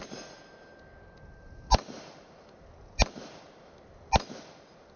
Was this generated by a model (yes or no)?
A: no